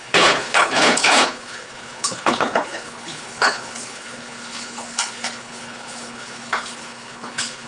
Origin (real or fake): fake